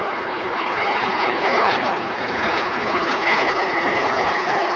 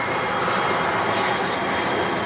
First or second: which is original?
second